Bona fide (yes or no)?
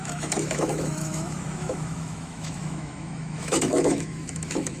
no